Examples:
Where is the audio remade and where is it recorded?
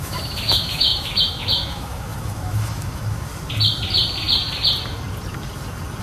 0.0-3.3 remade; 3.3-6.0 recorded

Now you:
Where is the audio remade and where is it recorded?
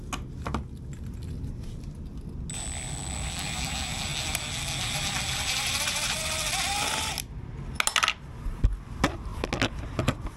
0.0-10.4 recorded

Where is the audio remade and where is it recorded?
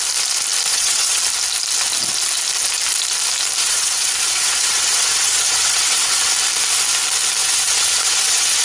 0.0-0.7 recorded; 0.7-1.2 remade; 1.2-3.6 recorded; 3.6-6.3 remade; 6.3-7.4 recorded; 7.4-8.6 remade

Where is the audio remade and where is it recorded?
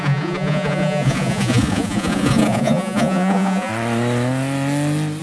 0.0-3.7 remade; 3.7-5.2 recorded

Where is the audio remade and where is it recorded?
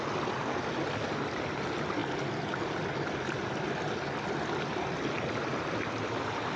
0.0-6.6 recorded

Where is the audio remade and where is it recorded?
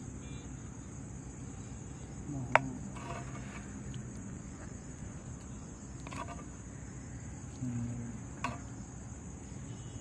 0.0-4.0 recorded; 4.0-5.8 remade; 5.8-10.0 recorded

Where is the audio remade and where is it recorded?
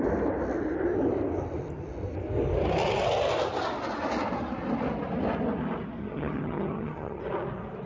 0.0-6.0 recorded; 6.0-7.2 remade; 7.2-7.9 recorded